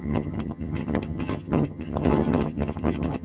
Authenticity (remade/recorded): remade